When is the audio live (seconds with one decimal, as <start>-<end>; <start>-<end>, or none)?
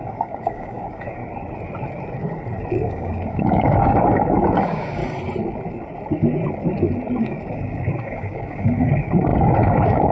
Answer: 1.2-2.7; 5.0-7.2